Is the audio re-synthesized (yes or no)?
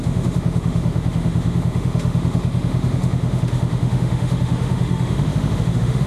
yes